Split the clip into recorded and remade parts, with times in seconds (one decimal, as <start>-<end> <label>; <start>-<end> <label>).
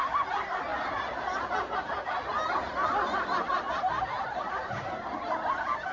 0.0-5.9 recorded